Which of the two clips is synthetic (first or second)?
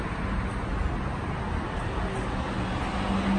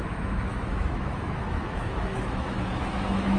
second